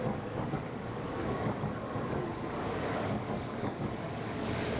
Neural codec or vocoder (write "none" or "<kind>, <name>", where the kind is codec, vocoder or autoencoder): codec, DAC